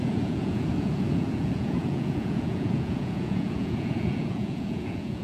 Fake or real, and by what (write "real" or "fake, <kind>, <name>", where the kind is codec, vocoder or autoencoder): fake, vocoder, Vocos